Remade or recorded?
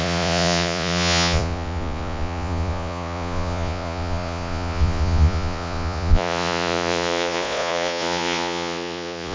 remade